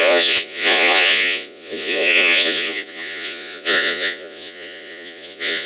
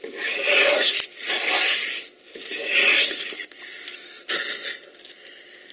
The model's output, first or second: first